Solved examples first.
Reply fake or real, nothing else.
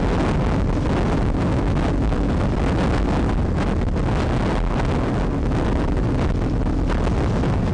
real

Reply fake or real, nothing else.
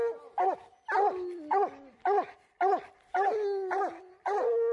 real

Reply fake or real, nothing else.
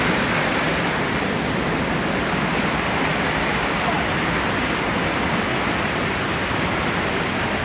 real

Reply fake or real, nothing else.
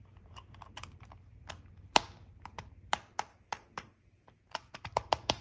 fake